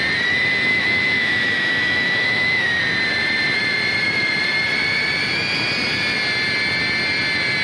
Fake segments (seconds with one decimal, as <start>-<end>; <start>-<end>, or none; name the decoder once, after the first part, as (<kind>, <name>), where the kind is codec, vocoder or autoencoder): 0.7-2.8 (autoencoder, DAC-VAE)